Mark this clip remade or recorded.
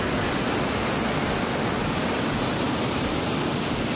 recorded